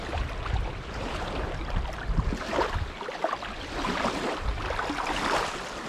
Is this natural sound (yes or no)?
yes